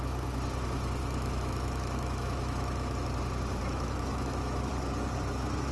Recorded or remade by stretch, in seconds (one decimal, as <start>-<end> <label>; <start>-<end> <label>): 0.0-1.0 recorded; 1.0-3.2 remade; 3.2-3.6 recorded; 3.6-4.7 remade; 4.7-5.7 recorded